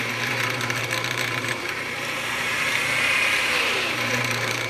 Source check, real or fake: fake